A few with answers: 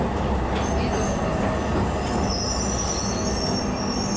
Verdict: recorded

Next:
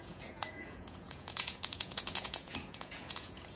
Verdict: remade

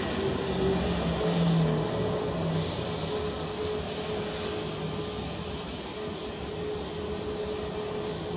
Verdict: recorded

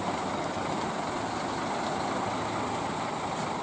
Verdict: recorded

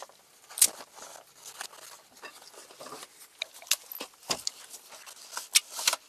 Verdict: recorded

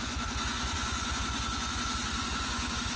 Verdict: remade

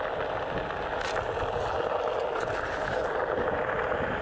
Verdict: recorded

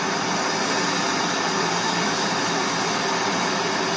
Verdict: recorded